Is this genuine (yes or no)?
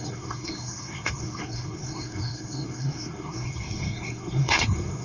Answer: no